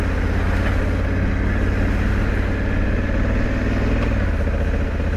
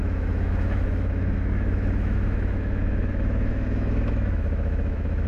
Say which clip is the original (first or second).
first